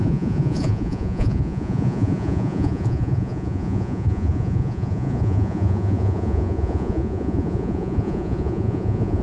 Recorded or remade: remade